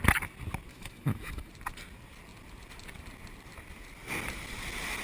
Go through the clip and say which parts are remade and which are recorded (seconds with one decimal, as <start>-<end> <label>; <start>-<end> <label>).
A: 0.0-0.7 recorded; 0.7-1.5 remade; 1.5-5.0 recorded